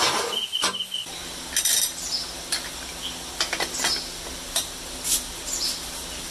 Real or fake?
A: real